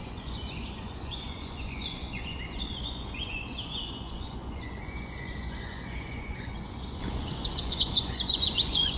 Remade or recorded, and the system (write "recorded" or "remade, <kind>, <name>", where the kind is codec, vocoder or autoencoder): remade, vocoder, Vocos